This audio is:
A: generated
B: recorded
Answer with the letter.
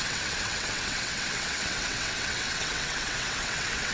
A